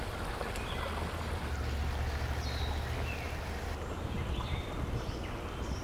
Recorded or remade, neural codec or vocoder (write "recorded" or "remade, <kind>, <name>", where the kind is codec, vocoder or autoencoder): recorded